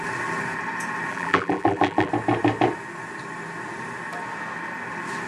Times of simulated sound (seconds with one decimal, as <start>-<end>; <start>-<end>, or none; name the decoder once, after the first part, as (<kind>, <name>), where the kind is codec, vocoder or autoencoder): 1.1-2.1 (vocoder, BigVGAN v2)